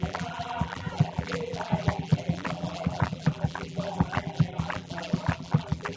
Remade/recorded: remade